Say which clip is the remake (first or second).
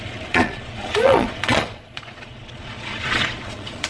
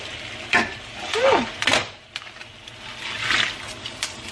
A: first